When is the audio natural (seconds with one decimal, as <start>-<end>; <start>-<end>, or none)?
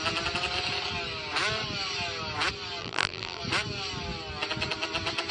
0.0-2.8; 3.4-5.3